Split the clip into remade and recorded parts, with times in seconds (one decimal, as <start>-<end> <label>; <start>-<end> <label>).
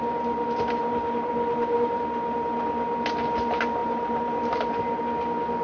0.0-0.8 recorded; 0.8-2.0 remade; 2.0-3.8 recorded; 3.8-5.0 remade; 5.0-5.6 recorded